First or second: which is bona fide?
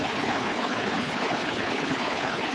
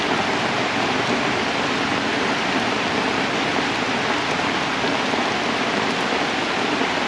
second